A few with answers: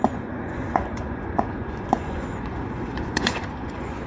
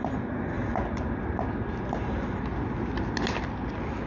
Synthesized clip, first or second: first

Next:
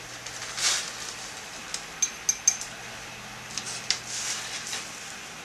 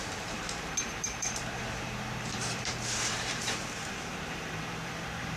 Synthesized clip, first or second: second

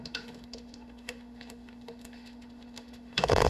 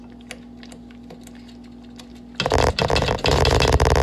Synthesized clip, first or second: first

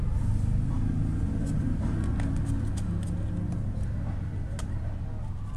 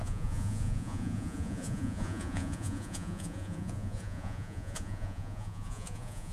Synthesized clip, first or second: second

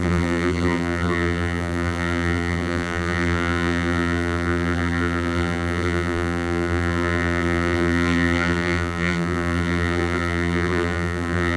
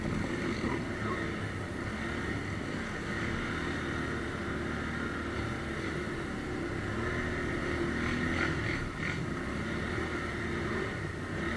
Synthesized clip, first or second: first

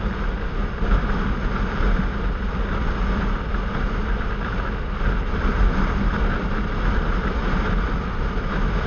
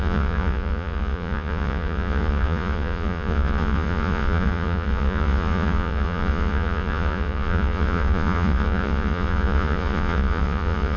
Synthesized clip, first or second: second